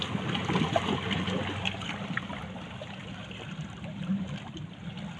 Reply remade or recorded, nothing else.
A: recorded